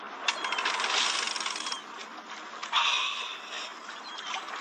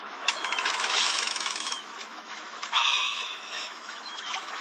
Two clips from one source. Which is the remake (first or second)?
second